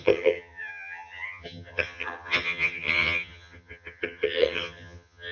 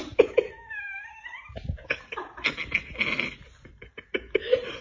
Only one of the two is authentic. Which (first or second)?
second